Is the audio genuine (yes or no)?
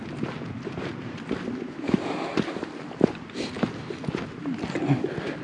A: yes